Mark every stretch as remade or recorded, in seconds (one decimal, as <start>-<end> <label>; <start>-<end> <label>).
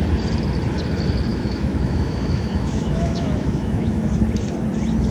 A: 0.0-1.3 recorded; 1.3-4.0 remade; 4.0-5.1 recorded